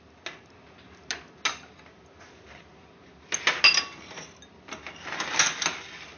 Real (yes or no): yes